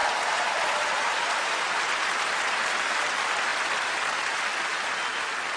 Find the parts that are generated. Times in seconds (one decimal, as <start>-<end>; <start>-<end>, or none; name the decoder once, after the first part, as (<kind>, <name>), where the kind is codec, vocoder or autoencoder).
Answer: 0.0-2.8 (vocoder, BigVGAN v2)